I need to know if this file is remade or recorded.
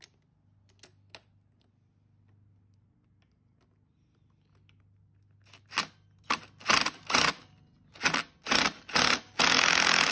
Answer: recorded